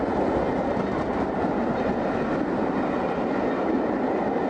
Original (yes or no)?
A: yes